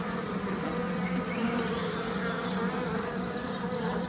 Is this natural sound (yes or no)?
yes